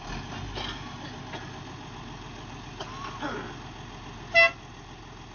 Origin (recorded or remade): recorded